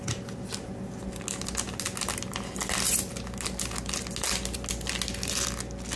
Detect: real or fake real